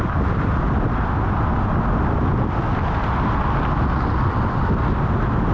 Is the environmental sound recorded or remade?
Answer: recorded